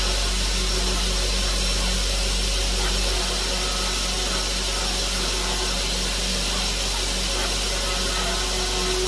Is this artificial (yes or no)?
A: no